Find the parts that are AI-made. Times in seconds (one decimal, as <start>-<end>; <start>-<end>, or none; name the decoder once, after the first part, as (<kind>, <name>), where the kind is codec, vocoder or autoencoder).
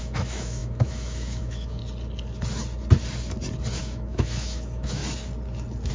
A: 0.0-1.8 (autoencoder, DAC-VAE); 3.8-5.0